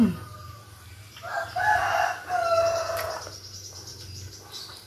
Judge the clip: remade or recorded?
recorded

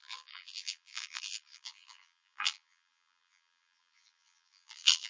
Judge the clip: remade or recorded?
remade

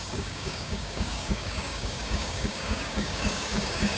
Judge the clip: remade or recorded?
remade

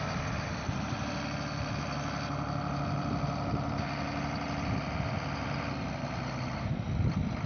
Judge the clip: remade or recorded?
recorded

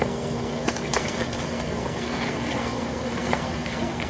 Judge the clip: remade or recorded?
remade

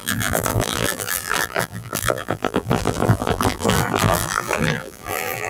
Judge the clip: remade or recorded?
remade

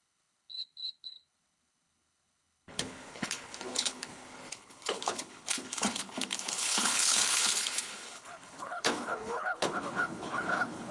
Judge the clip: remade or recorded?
remade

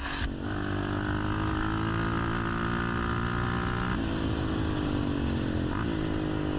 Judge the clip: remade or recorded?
recorded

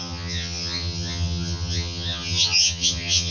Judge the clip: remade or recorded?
remade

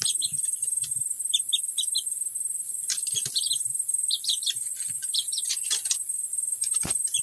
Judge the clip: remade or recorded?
remade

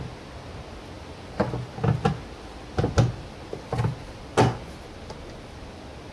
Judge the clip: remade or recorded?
recorded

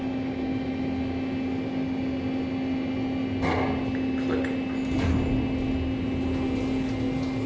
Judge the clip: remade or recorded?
recorded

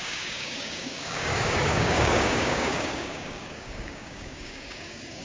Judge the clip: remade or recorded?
remade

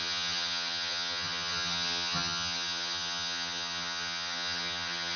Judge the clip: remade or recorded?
remade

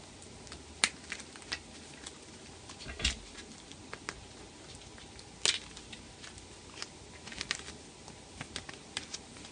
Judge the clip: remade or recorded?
recorded